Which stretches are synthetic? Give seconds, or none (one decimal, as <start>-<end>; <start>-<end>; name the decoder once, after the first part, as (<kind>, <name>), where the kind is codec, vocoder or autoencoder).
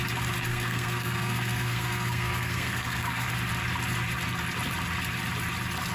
0.5-3.3 (codec, SNAC)